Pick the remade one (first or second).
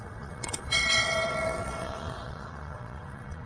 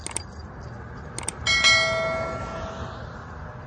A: first